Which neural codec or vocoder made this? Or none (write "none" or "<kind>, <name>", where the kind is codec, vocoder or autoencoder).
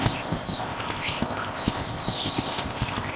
codec, ZipCodec